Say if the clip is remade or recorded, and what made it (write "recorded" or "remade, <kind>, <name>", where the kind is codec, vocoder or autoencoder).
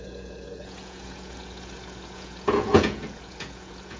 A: remade, vocoder, Vocos